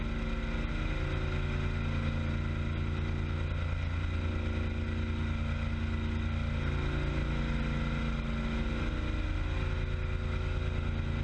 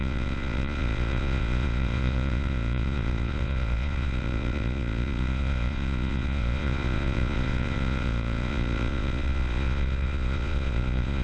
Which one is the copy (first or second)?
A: second